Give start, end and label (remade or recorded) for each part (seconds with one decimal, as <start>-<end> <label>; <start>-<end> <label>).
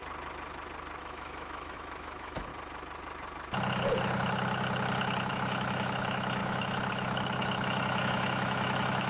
0.0-1.0 recorded; 1.0-2.5 remade; 2.5-5.3 recorded; 5.3-9.1 remade